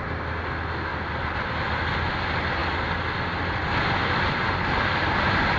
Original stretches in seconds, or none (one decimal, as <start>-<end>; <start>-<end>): 0.0-5.6